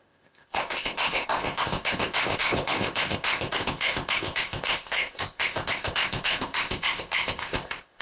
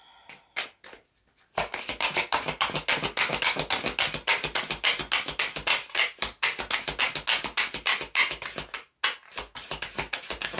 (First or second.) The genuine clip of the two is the second